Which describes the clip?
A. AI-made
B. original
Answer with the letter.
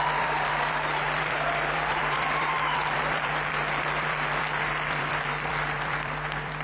A